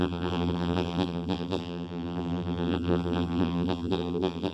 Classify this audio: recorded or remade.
remade